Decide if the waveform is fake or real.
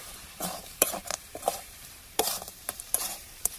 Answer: fake